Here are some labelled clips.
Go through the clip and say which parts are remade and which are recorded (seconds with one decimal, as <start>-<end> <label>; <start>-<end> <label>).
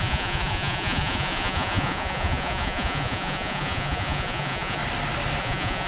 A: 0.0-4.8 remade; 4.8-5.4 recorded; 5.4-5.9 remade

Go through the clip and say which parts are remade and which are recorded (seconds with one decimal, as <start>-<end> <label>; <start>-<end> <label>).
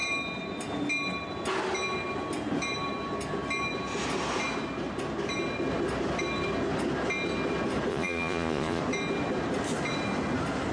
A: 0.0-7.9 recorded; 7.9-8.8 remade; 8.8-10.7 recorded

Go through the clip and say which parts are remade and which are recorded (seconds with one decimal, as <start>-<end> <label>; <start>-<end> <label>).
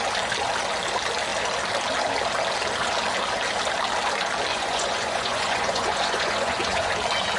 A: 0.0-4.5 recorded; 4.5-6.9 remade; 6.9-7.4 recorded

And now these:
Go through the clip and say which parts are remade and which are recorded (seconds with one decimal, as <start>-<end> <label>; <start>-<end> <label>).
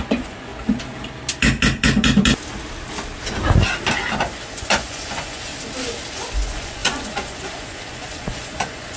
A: 0.0-0.5 remade; 0.5-4.5 recorded; 4.5-5.5 remade; 5.5-6.1 recorded; 6.1-9.0 remade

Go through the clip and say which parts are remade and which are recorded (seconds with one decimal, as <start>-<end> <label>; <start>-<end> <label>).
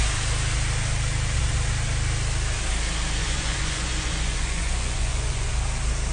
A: 0.0-3.2 recorded; 3.2-5.5 remade; 5.5-6.1 recorded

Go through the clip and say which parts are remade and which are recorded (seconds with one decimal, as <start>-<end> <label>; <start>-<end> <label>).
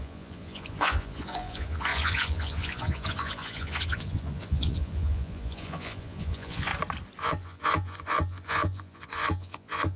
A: 0.0-6.7 remade; 6.7-7.2 recorded; 7.2-10.0 remade